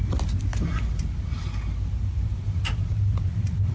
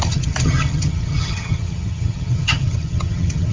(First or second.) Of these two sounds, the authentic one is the first